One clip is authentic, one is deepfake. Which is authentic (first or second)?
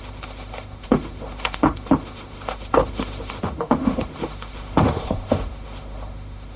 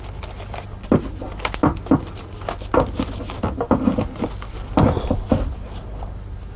second